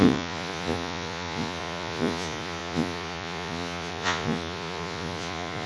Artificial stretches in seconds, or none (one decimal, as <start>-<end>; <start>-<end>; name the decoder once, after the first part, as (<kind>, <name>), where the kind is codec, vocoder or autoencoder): 0.0-5.7 (vocoder, Vocos)